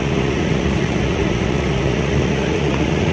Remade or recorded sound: remade